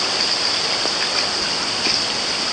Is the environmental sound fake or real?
real